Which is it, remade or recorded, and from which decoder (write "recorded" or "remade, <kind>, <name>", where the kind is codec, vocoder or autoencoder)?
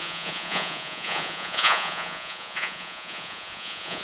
remade, vocoder, Vocos